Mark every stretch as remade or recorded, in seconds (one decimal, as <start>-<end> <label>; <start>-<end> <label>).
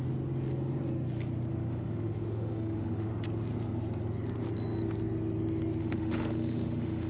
0.0-1.5 recorded; 1.5-3.1 remade; 3.1-5.8 recorded; 5.8-7.1 remade